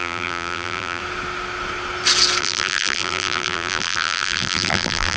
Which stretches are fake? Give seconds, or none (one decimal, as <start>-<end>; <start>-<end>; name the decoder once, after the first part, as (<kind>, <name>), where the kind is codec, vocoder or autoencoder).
0.0-1.0 (vocoder, BigVGAN v2); 2.4-5.2